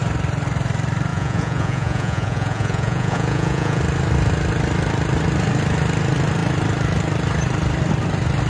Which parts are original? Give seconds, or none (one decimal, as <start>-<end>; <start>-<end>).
0.0-1.1; 3.8-8.5